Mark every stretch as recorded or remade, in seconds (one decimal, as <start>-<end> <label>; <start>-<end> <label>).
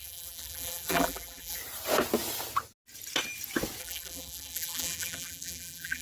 0.0-1.6 remade; 1.6-3.8 recorded; 3.8-6.0 remade